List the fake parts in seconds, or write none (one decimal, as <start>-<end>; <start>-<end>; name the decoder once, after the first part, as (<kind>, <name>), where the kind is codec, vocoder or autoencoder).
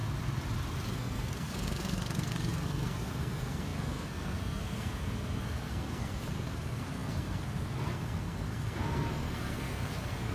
0.9-10.3 (codec, SNAC)